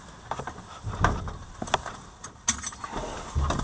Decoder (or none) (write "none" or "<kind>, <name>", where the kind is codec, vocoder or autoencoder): none